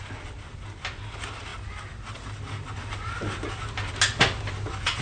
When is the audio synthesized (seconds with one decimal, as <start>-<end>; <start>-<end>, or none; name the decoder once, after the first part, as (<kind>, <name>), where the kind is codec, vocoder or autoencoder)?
none